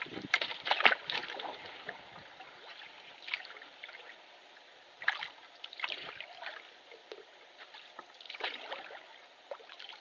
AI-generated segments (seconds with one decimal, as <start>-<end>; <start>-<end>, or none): 0.0-1.2; 2.7-4.4; 5.2-10.0